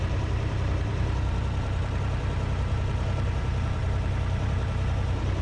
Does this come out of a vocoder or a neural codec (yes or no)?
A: yes